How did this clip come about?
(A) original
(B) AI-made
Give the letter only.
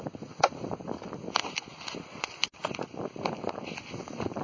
A